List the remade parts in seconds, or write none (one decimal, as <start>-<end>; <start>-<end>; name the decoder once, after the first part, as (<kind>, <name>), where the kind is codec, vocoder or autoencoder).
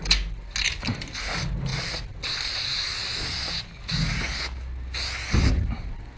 none